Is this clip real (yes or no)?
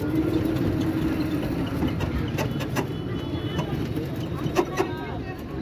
yes